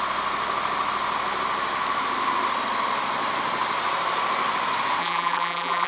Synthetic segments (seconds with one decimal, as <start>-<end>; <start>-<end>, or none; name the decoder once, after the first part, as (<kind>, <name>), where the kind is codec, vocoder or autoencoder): 5.0-5.9 (vocoder, BigVGAN v2)

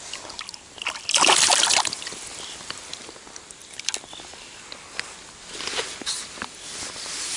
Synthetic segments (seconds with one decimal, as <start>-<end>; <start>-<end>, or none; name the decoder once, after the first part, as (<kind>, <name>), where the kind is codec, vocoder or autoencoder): 1.5-2.9 (vocoder, BigVGAN v2)

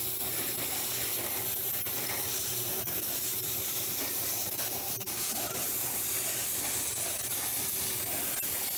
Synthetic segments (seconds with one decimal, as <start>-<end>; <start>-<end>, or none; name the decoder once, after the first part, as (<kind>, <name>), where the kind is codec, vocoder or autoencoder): 2.5-6.0 (vocoder, BigVGAN v2)

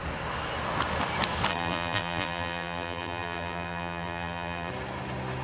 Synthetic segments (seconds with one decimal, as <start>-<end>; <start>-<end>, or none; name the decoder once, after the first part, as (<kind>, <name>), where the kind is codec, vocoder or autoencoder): 1.5-4.7 (vocoder, BigVGAN v2)

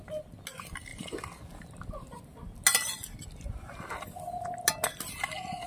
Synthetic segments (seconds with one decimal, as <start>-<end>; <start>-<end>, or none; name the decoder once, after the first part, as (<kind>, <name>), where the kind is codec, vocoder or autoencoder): none

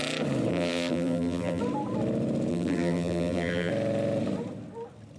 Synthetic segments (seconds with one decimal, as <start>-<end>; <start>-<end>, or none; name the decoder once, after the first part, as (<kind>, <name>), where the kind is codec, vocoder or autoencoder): 0.5-1.6 (vocoder, BigVGAN v2); 2.5-3.7

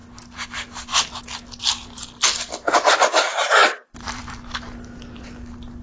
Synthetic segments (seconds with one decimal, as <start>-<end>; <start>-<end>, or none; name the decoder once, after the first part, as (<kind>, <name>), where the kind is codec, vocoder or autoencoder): 3.6-4.6 (vocoder, BigVGAN v2)